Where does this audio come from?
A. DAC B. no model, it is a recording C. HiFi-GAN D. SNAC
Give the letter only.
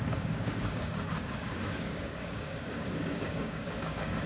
A